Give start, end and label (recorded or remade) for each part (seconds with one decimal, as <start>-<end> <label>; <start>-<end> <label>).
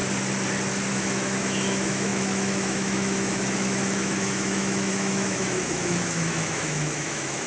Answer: 0.0-0.9 recorded; 0.9-7.5 remade